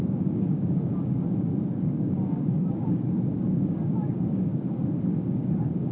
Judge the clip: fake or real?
fake